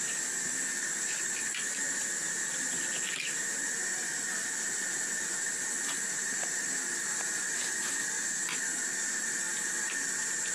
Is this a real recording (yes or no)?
yes